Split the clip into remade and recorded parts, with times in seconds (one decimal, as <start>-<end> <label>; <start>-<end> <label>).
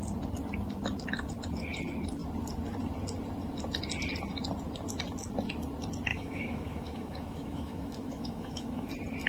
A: 0.0-6.1 recorded; 6.1-8.9 remade; 8.9-9.3 recorded